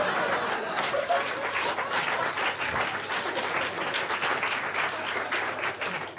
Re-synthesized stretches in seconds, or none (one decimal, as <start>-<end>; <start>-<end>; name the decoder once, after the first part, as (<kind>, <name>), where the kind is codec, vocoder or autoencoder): 0.5-1.1 (codec, SNAC)